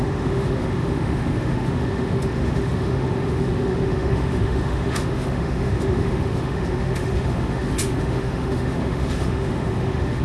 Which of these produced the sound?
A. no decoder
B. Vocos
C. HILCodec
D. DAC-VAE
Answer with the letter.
D